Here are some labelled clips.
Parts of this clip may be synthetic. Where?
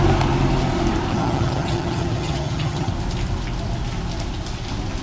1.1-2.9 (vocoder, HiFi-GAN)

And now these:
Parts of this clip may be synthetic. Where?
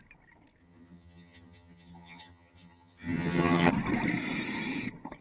0.6-3.7 (vocoder, HiFi-GAN)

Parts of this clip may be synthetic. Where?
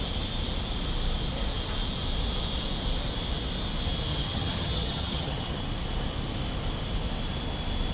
4.1-5.6 (vocoder, HiFi-GAN)